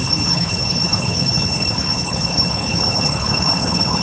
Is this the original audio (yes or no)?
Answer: no